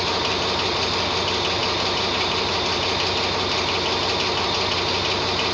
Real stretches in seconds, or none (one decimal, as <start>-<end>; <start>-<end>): 0.0-5.5